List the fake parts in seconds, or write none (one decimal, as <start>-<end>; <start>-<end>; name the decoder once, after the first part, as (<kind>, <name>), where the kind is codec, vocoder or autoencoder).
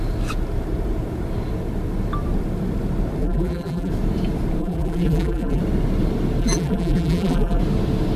3.2-3.9 (vocoder, BigVGAN v2); 4.6-5.6; 6.4-7.6